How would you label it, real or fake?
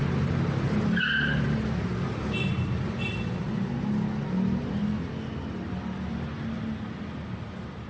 real